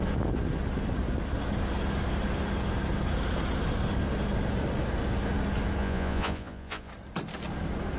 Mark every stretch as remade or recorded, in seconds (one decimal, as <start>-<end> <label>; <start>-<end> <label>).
0.0-5.8 recorded; 5.8-6.9 remade; 6.9-8.0 recorded